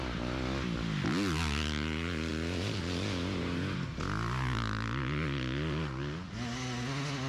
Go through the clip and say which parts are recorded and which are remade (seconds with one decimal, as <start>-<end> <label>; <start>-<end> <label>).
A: 0.0-7.3 recorded

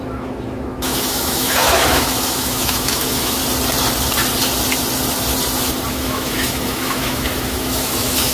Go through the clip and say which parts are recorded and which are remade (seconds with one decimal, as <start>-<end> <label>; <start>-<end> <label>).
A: 0.0-3.4 remade; 3.4-5.9 recorded; 5.9-8.3 remade

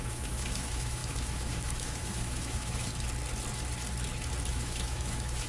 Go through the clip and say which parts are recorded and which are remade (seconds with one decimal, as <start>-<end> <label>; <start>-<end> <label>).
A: 0.0-2.9 remade; 2.9-4.5 recorded; 4.5-5.5 remade

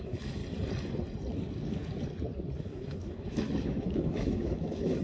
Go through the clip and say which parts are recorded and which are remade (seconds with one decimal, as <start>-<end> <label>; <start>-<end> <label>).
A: 0.0-0.4 remade; 0.4-2.6 recorded; 2.6-5.0 remade

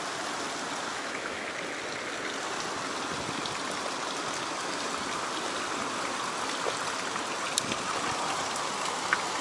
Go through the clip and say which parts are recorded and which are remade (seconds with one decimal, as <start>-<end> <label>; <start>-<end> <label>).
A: 0.0-0.9 recorded; 0.9-1.5 remade; 1.5-9.4 recorded